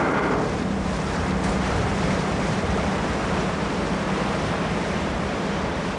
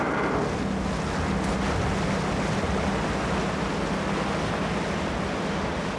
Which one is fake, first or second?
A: first